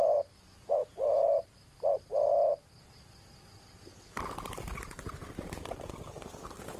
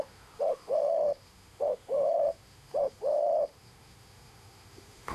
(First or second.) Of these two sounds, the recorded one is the first